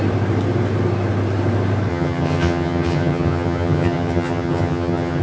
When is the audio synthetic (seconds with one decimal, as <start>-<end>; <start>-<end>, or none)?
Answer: 1.9-5.2